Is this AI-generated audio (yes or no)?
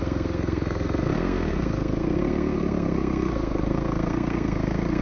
yes